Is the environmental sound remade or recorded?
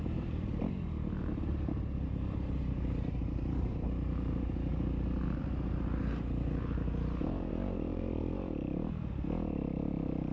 remade